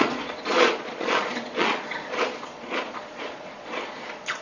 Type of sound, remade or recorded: remade